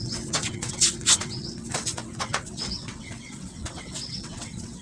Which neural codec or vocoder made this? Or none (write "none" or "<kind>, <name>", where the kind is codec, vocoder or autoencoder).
vocoder, WaveNeXt